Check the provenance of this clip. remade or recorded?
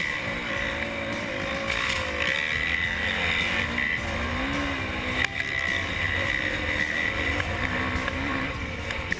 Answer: recorded